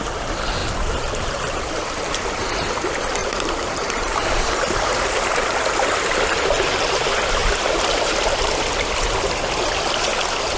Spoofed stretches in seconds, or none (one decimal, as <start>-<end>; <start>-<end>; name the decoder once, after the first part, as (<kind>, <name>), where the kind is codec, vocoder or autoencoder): 0.6-2.2 (vocoder, BigVGAN v2); 3.2-4.6